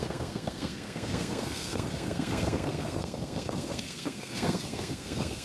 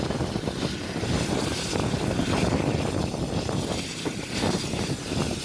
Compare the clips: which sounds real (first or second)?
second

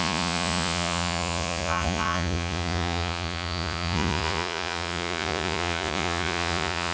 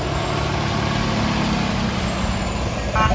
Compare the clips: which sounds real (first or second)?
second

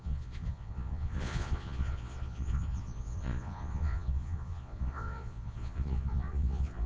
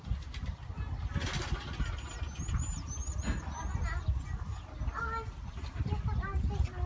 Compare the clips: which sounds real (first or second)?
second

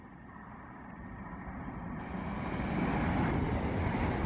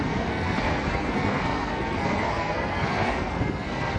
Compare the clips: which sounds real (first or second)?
first